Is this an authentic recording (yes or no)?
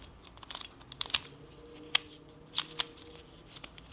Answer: yes